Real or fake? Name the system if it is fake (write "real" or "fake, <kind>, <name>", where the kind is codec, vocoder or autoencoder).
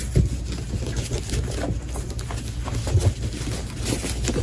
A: real